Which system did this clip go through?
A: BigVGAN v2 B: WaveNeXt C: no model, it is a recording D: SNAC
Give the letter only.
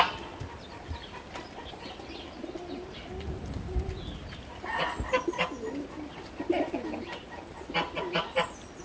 C